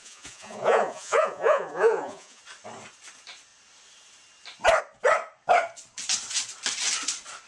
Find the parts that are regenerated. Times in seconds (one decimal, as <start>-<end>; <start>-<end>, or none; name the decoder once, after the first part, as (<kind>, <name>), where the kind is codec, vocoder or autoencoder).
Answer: 0.0-2.4 (vocoder, Vocos)

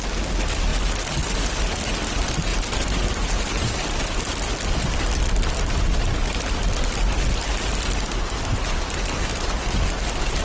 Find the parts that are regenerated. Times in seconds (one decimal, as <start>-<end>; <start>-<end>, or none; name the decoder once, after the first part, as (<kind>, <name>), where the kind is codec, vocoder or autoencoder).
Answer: 2.5-4.3 (vocoder, BigVGAN v2)

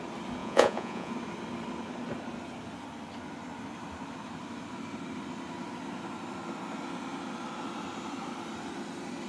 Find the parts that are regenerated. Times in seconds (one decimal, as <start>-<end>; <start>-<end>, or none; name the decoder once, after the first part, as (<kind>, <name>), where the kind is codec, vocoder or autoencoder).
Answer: 0.4-1.1 (vocoder, Vocos)

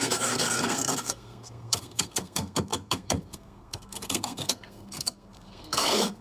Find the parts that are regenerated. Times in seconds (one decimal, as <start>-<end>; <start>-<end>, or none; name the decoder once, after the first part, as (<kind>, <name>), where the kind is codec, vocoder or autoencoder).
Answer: 0.0-6.2 (codec, SNAC)

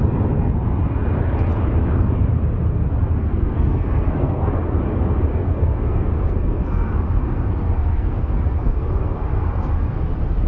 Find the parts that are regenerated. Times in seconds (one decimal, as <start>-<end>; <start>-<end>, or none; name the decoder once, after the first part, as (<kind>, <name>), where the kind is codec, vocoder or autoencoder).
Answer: 3.2-4.5 (codec, SNAC); 5.3-10.1

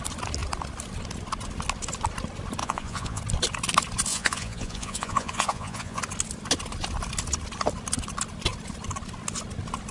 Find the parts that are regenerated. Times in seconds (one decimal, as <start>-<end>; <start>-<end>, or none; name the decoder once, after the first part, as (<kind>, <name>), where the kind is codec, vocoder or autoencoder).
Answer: 2.6-3.2 (vocoder, Vocos); 4.1-6.0

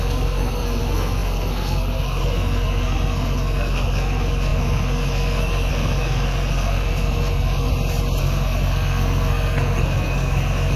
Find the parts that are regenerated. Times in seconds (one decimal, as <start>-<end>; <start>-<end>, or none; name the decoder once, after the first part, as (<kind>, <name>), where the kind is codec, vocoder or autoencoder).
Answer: 0.0-7.7 (codec, SNAC); 8.2-10.8